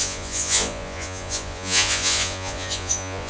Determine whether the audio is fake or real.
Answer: fake